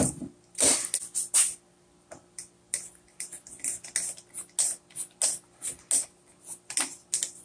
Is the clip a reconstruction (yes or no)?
no